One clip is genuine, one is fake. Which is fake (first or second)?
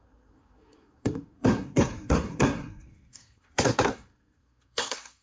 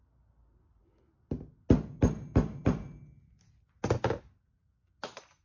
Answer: first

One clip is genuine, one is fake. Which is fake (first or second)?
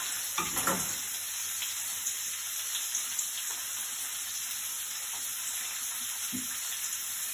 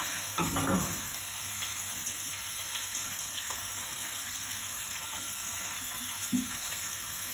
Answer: second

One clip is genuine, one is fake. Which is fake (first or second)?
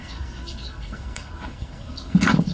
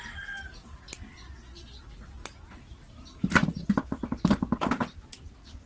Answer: first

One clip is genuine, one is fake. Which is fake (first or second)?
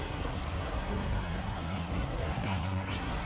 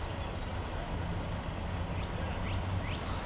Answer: first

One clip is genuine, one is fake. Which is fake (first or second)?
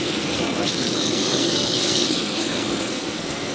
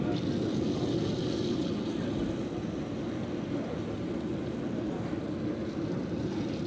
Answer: first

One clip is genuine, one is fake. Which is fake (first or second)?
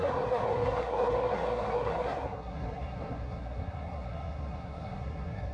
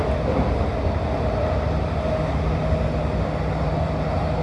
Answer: first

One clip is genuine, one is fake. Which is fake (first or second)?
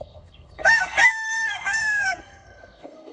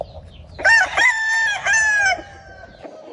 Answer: first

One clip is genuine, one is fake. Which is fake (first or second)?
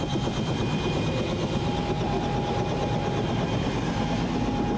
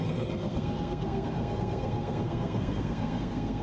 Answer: second